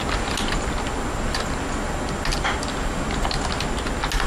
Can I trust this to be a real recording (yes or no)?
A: yes